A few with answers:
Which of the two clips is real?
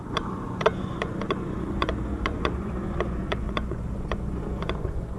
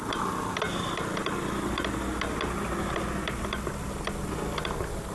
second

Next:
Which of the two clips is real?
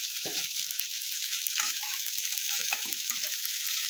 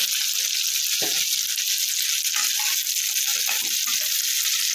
second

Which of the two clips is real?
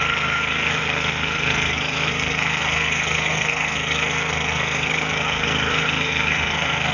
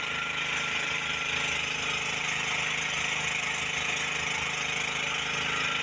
second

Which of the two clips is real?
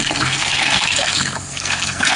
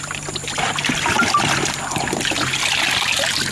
second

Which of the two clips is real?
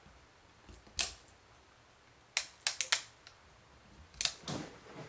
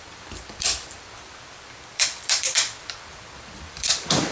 first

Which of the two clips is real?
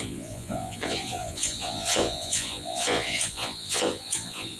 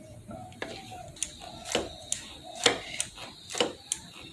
second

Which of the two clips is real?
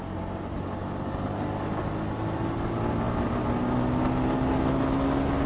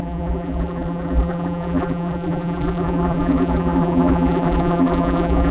first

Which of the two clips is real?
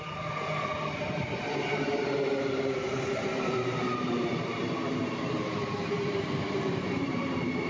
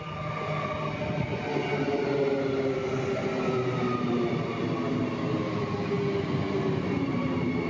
second